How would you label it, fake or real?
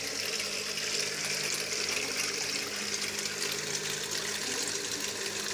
real